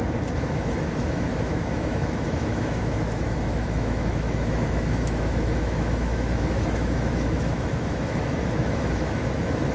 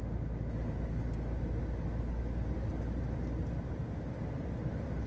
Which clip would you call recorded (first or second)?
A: second